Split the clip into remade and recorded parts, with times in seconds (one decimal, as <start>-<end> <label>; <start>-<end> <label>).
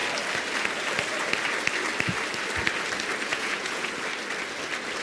0.0-3.3 recorded; 3.3-3.9 remade; 3.9-5.0 recorded